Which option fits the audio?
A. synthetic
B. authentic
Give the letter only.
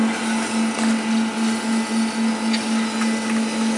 B